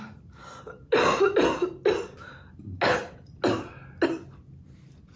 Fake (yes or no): no